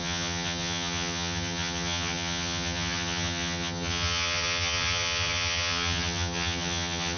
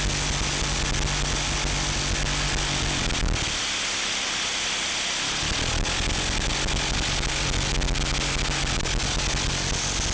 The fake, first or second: first